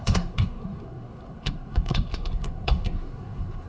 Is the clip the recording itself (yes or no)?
no